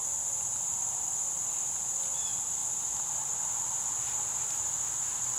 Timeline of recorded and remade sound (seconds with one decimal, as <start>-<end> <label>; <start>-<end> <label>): 0.0-0.7 remade; 0.7-1.6 recorded; 1.6-2.6 remade; 2.6-4.5 recorded; 4.5-5.4 remade